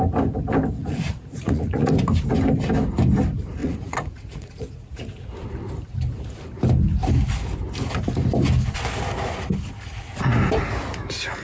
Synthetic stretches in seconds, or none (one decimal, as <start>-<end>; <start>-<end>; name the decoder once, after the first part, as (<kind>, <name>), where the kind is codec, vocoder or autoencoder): 0.8-1.9 (vocoder, Vocos); 3.6-5.0